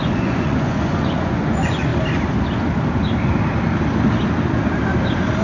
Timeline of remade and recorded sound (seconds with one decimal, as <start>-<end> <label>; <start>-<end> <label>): 0.0-1.9 remade; 1.9-5.4 recorded